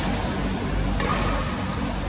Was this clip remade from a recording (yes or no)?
no